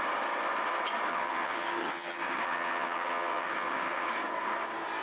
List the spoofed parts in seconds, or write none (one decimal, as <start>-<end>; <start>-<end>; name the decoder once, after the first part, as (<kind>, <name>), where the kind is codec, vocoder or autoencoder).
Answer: 1.1-4.1 (vocoder, HiFi-GAN)